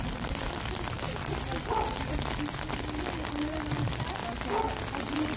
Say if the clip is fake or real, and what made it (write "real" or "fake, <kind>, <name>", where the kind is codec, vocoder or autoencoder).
real